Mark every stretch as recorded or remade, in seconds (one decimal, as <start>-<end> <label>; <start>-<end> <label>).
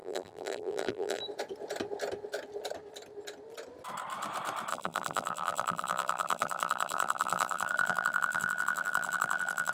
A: 0.0-1.2 remade; 1.2-4.7 recorded; 4.7-9.7 remade